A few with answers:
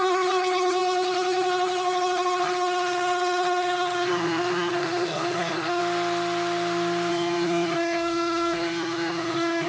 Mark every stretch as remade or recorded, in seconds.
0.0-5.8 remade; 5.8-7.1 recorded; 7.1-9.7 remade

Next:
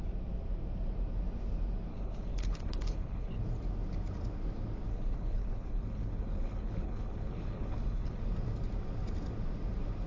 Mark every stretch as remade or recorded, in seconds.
0.0-1.9 recorded; 1.9-3.4 remade; 3.4-4.9 recorded; 4.9-8.2 remade; 8.2-10.1 recorded

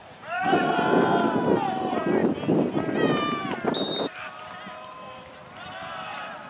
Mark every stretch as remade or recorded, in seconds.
0.0-0.7 remade; 0.7-6.5 recorded